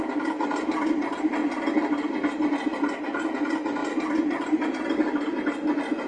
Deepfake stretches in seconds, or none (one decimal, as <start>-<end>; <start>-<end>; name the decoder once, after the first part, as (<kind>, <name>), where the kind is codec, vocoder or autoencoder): none